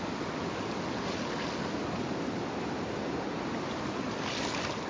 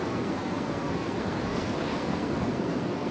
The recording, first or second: first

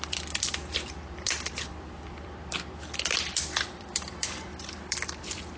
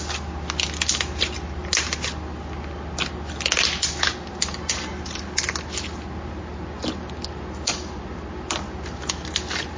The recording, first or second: second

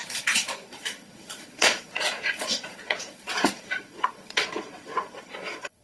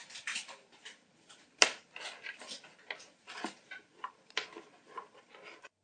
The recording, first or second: second